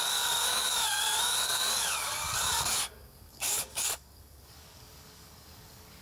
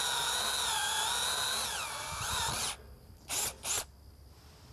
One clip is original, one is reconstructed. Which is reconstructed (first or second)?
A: first